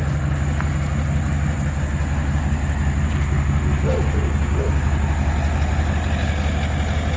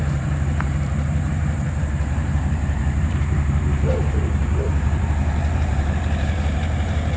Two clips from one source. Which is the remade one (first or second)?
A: second